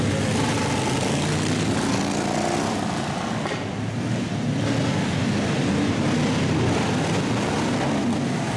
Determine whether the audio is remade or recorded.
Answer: recorded